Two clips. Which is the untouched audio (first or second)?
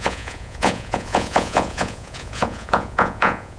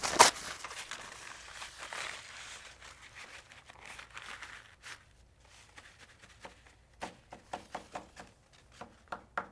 second